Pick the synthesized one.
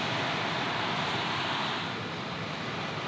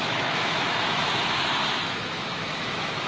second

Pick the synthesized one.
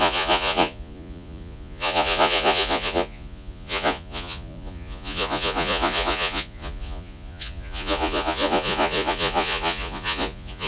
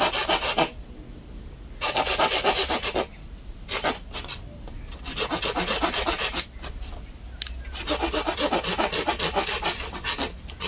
first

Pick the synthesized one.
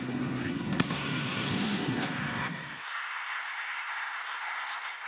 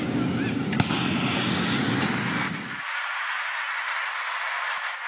first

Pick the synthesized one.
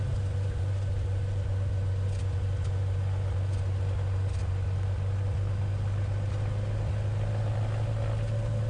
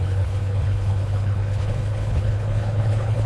second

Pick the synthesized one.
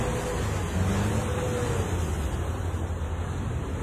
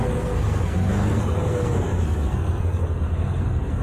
second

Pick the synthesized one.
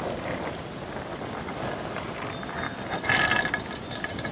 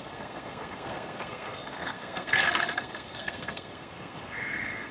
second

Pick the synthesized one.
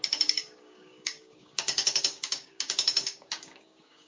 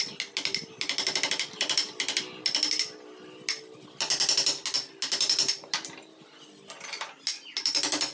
first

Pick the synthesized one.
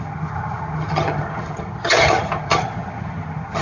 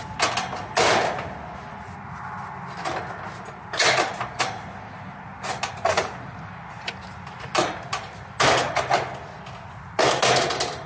first